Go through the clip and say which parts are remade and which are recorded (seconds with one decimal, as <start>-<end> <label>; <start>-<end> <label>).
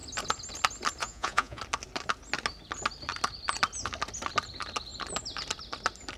0.0-1.0 recorded; 1.0-1.6 remade; 1.6-6.2 recorded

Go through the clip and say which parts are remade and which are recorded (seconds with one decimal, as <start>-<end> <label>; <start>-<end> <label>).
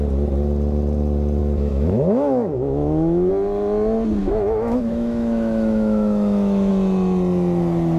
0.0-1.4 recorded; 1.4-3.3 remade; 3.3-4.2 recorded; 4.2-6.7 remade; 6.7-8.0 recorded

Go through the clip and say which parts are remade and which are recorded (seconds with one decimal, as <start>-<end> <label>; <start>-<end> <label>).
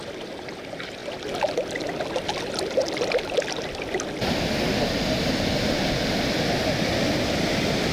0.0-1.0 remade; 1.0-2.4 recorded; 2.4-2.8 remade; 2.8-7.5 recorded; 7.5-7.9 remade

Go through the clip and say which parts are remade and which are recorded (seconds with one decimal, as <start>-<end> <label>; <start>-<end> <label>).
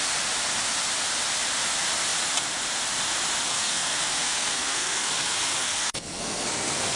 0.0-3.5 recorded; 3.5-7.0 remade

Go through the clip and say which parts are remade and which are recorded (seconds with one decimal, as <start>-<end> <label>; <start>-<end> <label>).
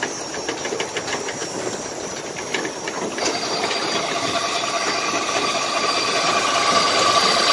0.0-7.5 recorded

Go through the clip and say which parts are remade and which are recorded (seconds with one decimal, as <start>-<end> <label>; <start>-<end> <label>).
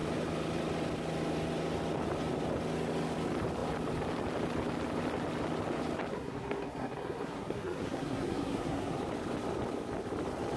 0.0-6.1 recorded; 6.1-9.0 remade; 9.0-10.6 recorded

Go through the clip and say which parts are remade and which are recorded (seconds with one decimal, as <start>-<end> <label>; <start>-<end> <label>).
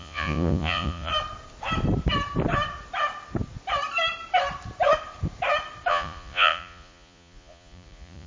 0.0-1.1 remade; 1.1-5.9 recorded; 5.9-8.3 remade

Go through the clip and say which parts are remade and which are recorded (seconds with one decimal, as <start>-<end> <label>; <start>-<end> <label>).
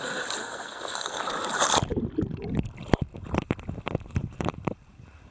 0.0-0.4 recorded; 0.4-1.2 remade; 1.2-5.3 recorded